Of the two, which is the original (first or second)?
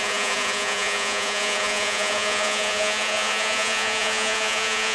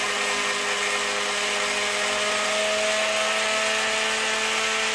second